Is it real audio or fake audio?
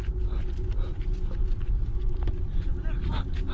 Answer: real